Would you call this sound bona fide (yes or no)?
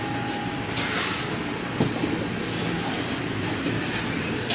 yes